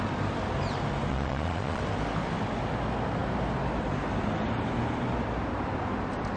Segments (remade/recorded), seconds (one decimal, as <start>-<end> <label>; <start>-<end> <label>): 0.0-1.1 recorded; 1.1-1.8 remade; 1.8-6.4 recorded

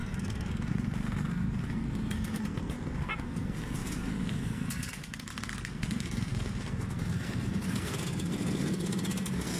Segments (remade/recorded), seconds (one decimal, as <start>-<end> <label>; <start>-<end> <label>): 0.0-9.6 remade